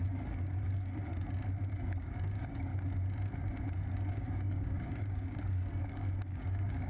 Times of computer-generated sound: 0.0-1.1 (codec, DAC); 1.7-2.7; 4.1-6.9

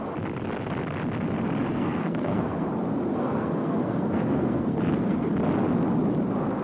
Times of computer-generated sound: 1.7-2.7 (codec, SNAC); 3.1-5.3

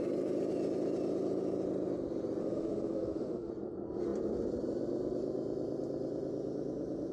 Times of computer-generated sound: 2.4-3.5 (autoencoder, DAC-VAE)